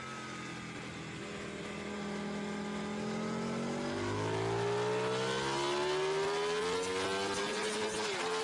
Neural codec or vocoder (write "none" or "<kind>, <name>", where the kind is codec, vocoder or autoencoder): none